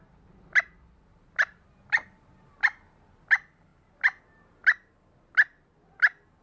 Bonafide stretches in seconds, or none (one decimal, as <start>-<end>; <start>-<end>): 0.0-6.4

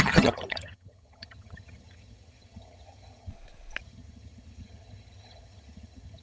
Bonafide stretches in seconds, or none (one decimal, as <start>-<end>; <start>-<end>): 3.3-3.8